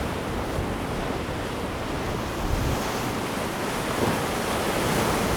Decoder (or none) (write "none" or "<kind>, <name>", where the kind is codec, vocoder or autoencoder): none